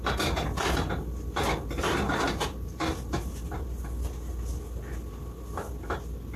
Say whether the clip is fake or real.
real